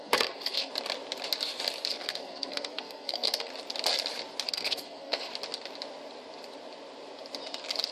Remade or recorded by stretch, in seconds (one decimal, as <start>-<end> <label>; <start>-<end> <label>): 0.0-0.7 remade; 0.7-1.9 recorded; 1.9-3.5 remade; 3.5-4.5 recorded; 4.5-5.3 remade; 5.3-7.9 recorded